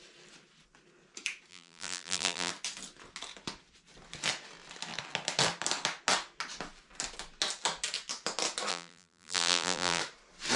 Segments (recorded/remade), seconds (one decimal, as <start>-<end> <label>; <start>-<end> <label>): 0.0-1.5 recorded; 1.5-2.5 remade; 2.5-8.7 recorded; 8.7-10.0 remade; 10.0-10.6 recorded